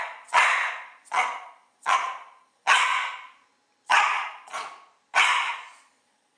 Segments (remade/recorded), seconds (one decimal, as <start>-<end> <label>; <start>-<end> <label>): 0.0-2.9 remade; 2.9-3.9 recorded; 3.9-4.5 remade; 4.5-5.4 recorded; 5.4-6.4 remade